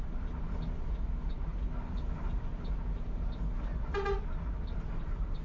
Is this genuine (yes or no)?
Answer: yes